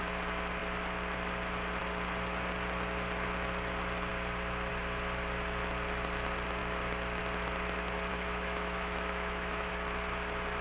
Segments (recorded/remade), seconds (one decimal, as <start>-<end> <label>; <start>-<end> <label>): 0.0-8.1 recorded; 8.1-9.7 remade; 9.7-10.6 recorded